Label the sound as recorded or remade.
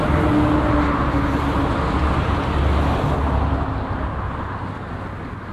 recorded